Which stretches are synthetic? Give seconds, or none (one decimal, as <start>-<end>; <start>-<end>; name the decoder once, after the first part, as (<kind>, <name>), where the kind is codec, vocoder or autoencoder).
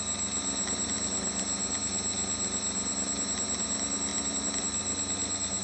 none